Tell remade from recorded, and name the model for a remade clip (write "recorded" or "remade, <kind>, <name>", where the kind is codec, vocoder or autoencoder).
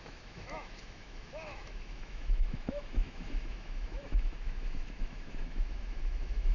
remade, autoencoder, DAC-VAE